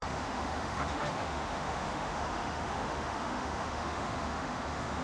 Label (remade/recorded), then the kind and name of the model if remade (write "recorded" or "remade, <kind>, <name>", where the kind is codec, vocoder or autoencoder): remade, autoencoder, DAC-VAE